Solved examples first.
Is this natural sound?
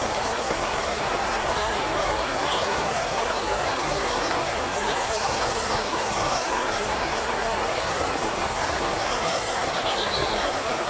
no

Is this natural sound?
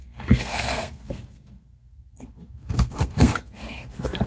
no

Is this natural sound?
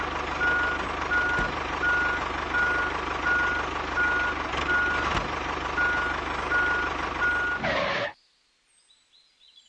yes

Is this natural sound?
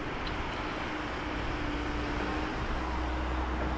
yes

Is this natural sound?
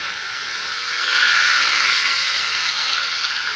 no